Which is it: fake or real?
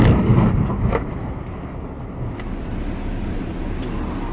real